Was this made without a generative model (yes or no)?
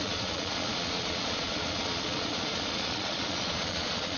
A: no